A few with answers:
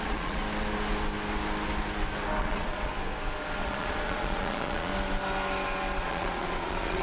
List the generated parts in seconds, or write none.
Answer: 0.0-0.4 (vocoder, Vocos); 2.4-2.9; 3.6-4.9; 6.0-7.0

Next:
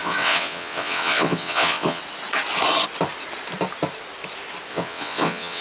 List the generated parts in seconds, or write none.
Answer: 0.0-2.0 (vocoder, WaveNeXt); 4.7-5.6

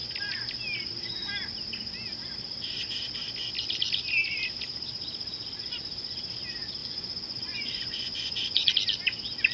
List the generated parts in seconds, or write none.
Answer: 6.8-8.7 (vocoder, Vocos)

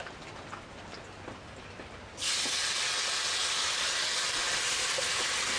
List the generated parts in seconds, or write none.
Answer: 3.4-4.0 (vocoder, BigVGAN v2)

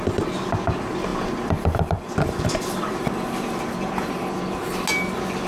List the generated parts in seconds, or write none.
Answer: 1.1-4.4 (vocoder, BigVGAN v2)